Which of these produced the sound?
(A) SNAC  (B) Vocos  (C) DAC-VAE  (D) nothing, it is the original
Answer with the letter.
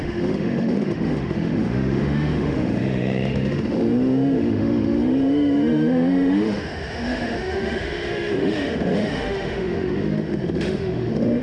C